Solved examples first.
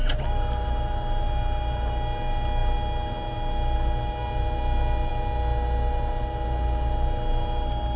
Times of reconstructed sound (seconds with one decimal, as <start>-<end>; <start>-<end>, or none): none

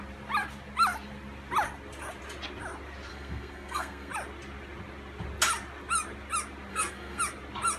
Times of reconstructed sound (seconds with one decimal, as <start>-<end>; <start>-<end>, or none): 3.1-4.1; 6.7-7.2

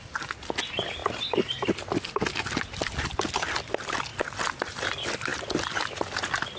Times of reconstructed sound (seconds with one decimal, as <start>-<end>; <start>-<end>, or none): none